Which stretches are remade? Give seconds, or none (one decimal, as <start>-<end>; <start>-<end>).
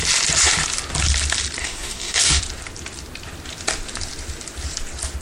1.6-2.4